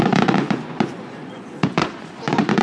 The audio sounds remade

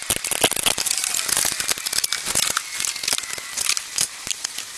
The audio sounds recorded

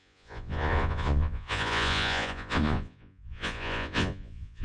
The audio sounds remade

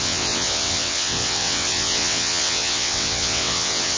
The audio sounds remade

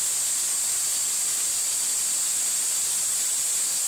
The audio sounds recorded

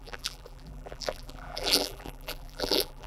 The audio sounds remade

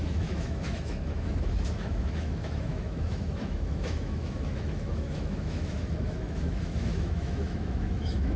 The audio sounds remade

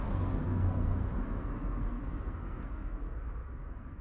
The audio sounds remade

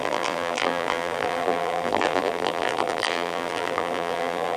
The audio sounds remade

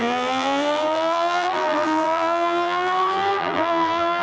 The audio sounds remade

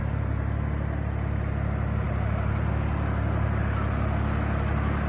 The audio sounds recorded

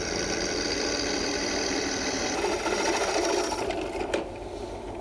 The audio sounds recorded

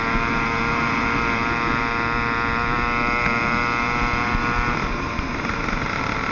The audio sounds recorded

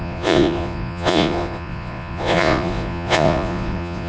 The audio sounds remade